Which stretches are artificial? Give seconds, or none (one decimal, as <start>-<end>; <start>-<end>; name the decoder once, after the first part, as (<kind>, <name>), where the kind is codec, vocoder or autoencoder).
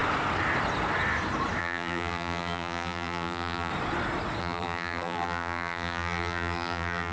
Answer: 1.6-3.7 (vocoder, BigVGAN v2); 4.4-7.1